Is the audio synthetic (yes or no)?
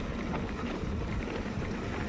no